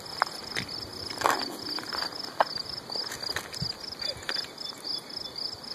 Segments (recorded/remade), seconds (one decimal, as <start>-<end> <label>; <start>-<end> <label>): 0.0-5.7 recorded